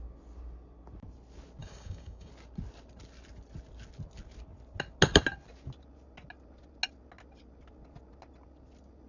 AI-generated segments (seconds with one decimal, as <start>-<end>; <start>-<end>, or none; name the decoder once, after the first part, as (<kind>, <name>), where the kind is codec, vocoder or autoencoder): 1.6-2.3 (codec, DAC)